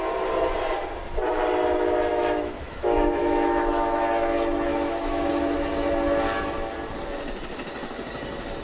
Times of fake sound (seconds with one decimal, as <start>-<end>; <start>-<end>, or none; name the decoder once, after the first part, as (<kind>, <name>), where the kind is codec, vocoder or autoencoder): 2.1-4.0 (autoencoder, DAC-VAE); 4.7-5.3